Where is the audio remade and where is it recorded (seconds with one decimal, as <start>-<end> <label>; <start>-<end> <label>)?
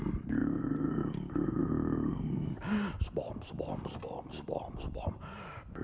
0.0-5.8 recorded